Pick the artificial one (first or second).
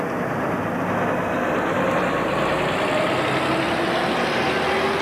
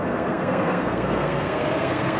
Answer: second